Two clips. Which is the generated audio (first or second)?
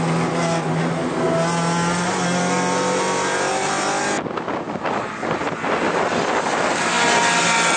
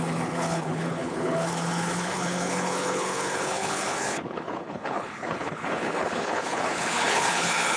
second